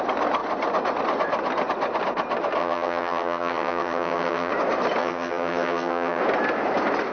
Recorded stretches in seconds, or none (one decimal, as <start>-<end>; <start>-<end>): 0.0-2.6; 4.5-5.0; 6.2-7.1